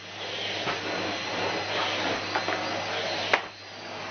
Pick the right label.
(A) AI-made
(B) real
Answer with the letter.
B